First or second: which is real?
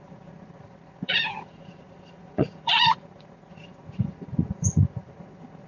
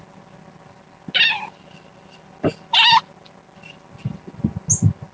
second